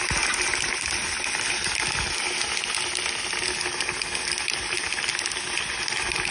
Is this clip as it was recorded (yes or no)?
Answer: yes